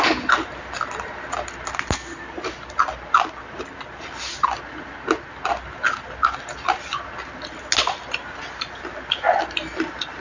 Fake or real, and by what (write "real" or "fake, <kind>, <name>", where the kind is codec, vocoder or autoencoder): real